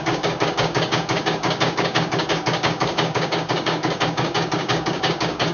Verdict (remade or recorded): remade